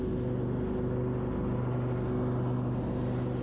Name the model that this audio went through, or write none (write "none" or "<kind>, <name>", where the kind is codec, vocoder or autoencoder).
none